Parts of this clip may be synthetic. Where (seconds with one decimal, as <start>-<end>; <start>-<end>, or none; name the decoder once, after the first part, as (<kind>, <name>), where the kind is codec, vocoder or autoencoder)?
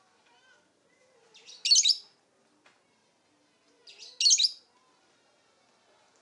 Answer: none